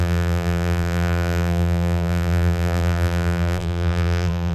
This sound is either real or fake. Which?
fake